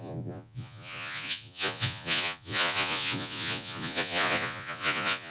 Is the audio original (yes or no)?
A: no